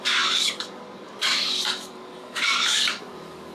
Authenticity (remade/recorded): remade